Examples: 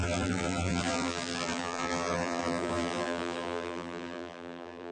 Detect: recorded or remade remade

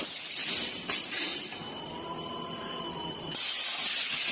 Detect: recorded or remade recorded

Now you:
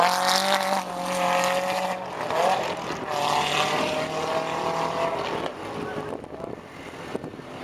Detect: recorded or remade recorded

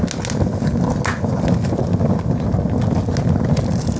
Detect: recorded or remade recorded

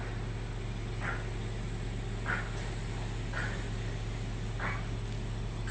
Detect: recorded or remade recorded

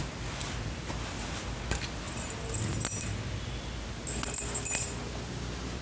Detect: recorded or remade recorded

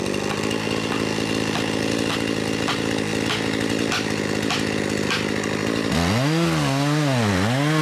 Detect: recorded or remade recorded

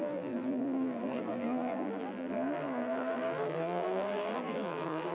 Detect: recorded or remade remade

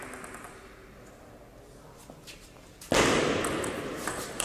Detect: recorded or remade recorded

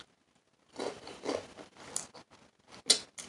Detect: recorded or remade recorded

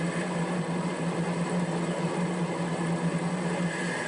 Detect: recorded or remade recorded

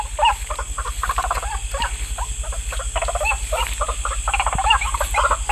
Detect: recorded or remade recorded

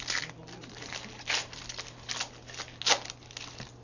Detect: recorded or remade recorded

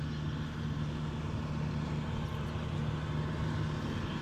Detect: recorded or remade recorded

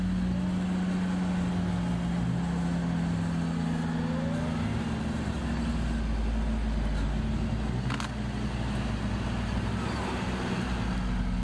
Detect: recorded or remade recorded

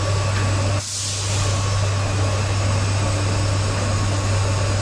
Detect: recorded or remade recorded